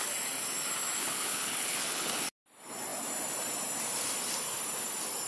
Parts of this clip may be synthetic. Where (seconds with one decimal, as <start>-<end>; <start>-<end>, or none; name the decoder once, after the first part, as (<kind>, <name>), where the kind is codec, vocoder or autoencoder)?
1.0-2.2 (codec, HILCodec)